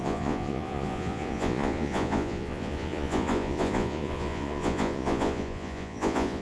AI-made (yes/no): yes